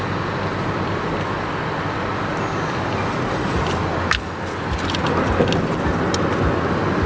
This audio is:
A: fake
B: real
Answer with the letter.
B